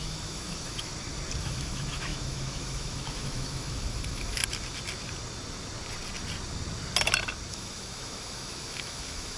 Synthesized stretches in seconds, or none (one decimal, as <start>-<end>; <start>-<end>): 0.0-0.9; 1.4-4.4; 7.5-9.4